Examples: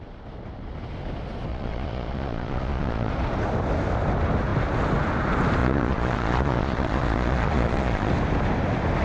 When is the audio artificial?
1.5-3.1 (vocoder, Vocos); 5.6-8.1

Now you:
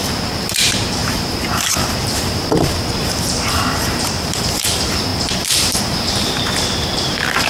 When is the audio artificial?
0.0-7.5 (vocoder, BigVGAN v2)

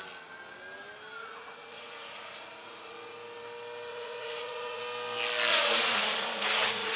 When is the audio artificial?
1.2-2.9 (vocoder, Vocos); 3.9-4.8; 5.5-7.0

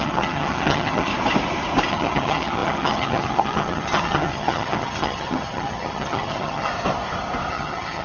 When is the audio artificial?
0.0-1.1 (vocoder, HiFi-GAN); 1.9-6.7; 7.5-8.0

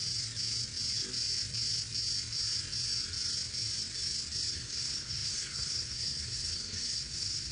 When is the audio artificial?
4.5-7.5 (codec, SNAC)

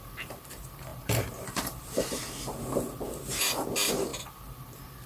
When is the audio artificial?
0.0-5.1 (vocoder, BigVGAN v2)

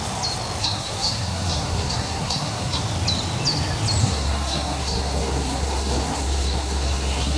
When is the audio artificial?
0.6-2.8 (codec, SNAC); 4.0-7.4

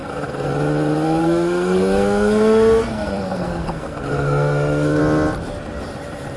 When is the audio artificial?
0.0-0.5 (codec, SNAC); 1.2-5.0